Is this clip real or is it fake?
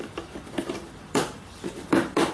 fake